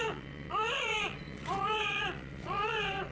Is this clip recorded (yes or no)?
no